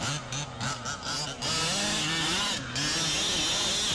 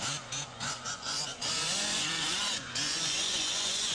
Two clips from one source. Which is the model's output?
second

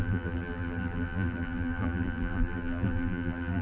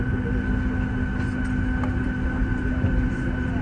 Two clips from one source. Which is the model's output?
first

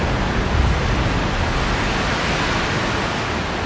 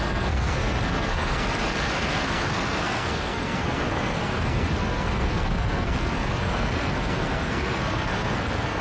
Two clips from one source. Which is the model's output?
second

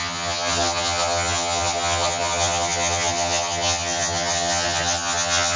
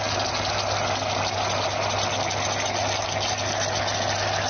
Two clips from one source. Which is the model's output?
first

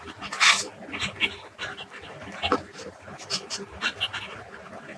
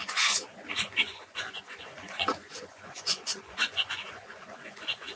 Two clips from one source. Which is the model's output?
second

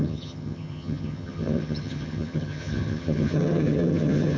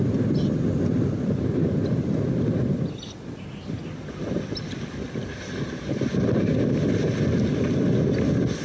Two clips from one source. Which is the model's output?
first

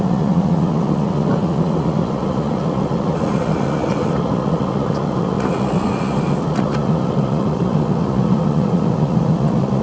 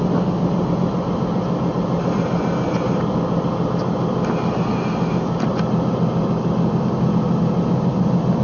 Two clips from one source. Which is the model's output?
first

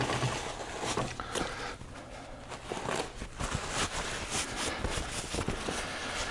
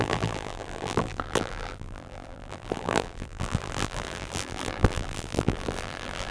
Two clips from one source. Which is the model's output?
second